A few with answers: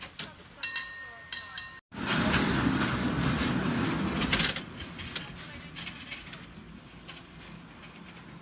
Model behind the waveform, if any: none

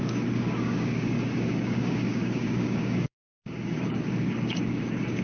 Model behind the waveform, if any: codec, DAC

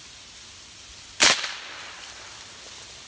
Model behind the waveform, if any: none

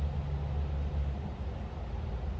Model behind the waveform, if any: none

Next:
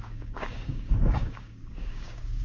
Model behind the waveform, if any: codec, DAC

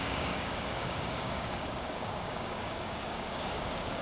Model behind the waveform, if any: codec, DAC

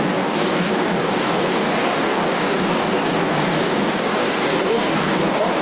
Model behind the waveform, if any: codec, DAC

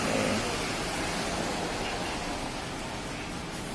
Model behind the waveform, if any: none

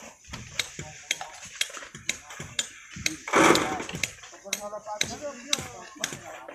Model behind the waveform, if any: none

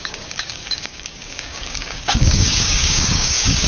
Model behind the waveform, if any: codec, DAC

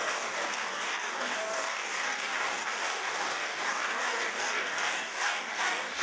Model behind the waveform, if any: codec, DAC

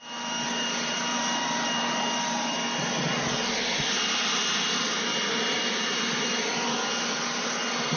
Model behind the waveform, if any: none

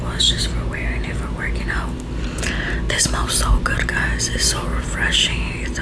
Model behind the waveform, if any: none